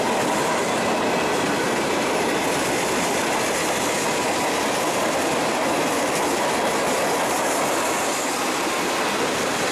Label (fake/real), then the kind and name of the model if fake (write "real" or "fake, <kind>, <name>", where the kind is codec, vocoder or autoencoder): real